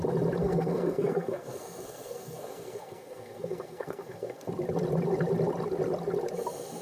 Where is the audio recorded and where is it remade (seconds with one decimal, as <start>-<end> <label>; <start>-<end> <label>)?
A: 0.0-0.4 recorded; 0.4-4.5 remade; 4.5-6.8 recorded